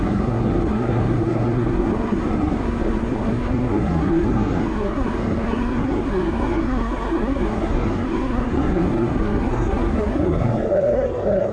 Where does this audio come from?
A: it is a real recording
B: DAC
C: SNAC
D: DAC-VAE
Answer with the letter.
C